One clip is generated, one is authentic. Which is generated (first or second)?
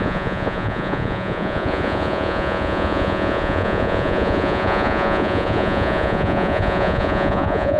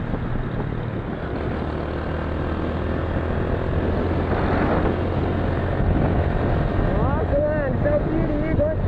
first